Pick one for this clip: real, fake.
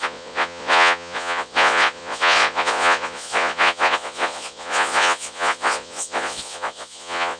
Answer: fake